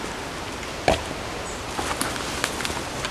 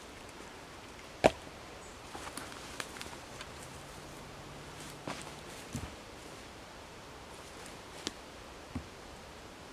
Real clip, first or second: first